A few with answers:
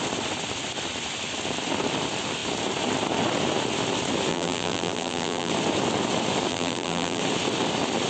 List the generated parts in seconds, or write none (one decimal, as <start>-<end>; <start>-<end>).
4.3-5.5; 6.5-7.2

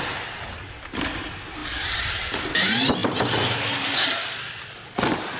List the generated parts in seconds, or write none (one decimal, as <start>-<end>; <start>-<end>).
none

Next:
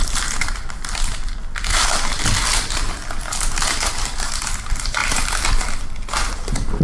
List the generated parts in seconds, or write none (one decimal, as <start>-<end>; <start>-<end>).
0.0-6.8

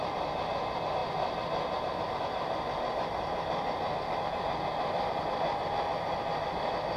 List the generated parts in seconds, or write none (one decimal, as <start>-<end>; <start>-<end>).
none

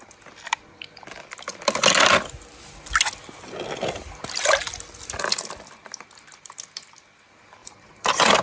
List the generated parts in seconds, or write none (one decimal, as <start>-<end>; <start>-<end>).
7.6-8.4

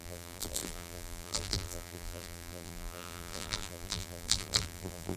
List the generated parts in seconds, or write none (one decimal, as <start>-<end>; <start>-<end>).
0.0-5.2

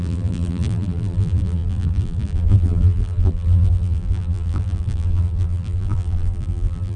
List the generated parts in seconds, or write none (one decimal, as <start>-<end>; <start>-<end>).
0.0-7.0

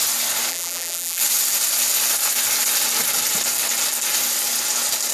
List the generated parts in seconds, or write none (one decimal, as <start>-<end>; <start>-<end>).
0.5-1.2